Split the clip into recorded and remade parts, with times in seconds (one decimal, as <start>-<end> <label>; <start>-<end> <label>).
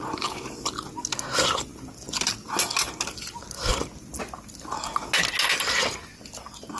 0.0-6.8 recorded